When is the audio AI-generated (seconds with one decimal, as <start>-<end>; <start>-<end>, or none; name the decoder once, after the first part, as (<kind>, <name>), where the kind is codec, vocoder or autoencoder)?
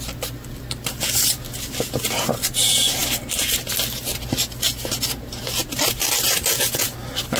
none